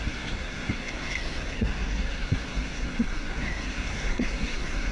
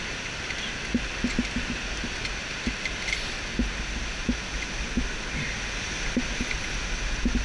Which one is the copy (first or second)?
first